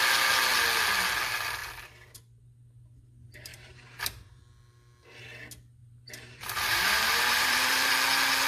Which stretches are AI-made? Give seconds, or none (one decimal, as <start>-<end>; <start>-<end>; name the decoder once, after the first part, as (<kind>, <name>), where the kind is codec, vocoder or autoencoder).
1.6-2.4 (vocoder, BigVGAN v2); 3.5-4.4; 5.8-7.9